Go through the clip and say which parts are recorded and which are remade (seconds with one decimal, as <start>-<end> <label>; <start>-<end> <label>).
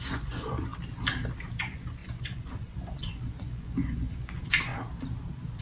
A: 0.0-0.7 remade; 0.7-1.6 recorded; 1.6-4.7 remade; 4.7-5.6 recorded